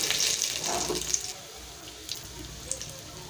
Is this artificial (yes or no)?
no